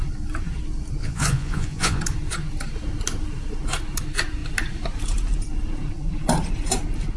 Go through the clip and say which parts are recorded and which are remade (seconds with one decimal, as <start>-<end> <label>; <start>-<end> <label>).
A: 0.0-1.0 recorded; 1.0-2.0 remade; 2.0-7.2 recorded